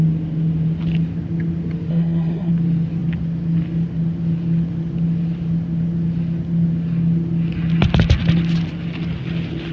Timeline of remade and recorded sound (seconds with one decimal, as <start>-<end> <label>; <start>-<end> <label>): 0.0-1.9 recorded; 1.9-2.5 remade; 2.5-9.7 recorded